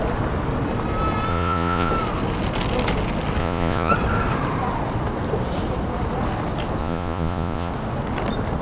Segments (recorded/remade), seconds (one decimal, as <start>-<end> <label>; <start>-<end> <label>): 0.0-1.3 recorded; 1.3-1.9 remade; 1.9-3.4 recorded; 3.4-3.9 remade; 3.9-6.8 recorded; 6.8-7.7 remade; 7.7-8.6 recorded